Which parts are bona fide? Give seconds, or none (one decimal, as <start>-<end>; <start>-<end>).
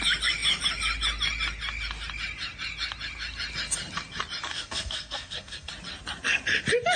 0.0-4.5; 5.7-7.0